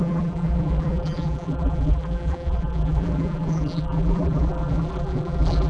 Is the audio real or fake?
fake